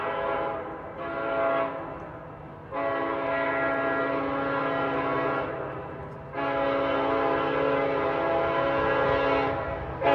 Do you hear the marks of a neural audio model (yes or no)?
no